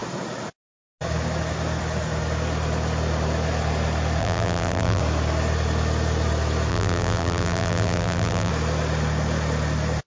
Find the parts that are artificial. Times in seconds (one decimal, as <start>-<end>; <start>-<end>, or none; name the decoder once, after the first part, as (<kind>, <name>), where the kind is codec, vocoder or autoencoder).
4.2-5.0 (vocoder, BigVGAN v2); 6.7-8.5